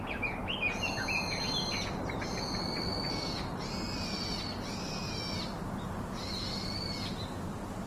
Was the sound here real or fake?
real